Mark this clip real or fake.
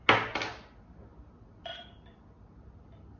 real